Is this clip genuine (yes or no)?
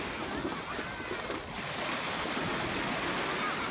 yes